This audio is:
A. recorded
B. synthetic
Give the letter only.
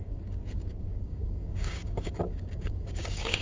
B